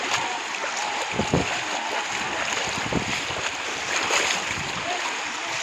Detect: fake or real real